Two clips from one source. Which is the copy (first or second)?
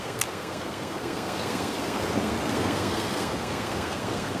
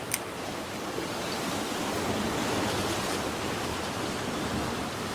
first